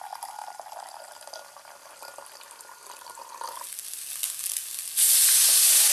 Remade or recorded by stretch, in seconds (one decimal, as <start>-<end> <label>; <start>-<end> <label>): 0.0-5.9 recorded